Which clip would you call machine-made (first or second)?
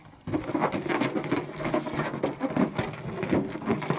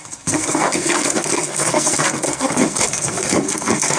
second